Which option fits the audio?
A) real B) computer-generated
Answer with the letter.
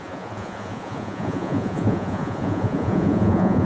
B